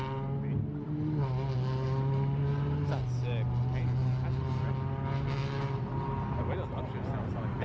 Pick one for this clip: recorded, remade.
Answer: recorded